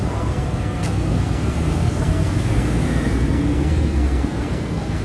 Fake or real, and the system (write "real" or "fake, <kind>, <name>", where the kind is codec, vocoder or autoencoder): fake, codec, SNAC